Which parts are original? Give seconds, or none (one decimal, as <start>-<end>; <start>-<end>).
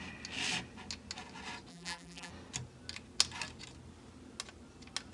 0.0-1.7; 2.3-5.1